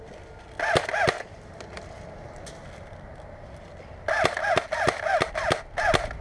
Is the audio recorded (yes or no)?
yes